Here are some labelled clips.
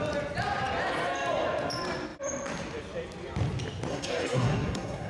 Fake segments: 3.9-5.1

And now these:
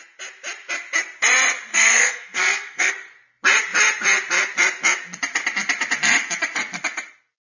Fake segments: 1.7-2.9

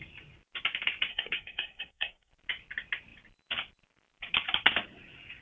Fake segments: 1.1-2.3

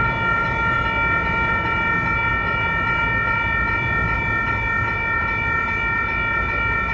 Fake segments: none

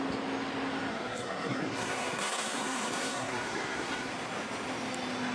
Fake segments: 0.9-4.1

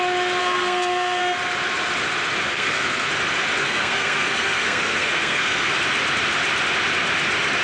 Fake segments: 0.4-1.2; 2.5-3.1; 3.6-5.7

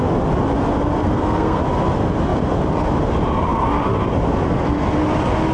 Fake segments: 1.0-1.6